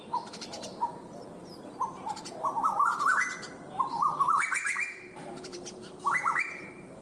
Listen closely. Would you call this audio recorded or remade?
remade